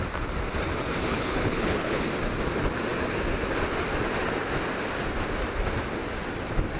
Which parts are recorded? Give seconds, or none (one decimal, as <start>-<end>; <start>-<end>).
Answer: 0.0-1.1; 2.0-6.8